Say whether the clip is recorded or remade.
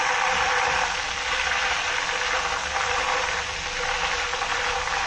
recorded